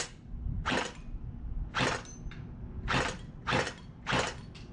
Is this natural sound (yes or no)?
yes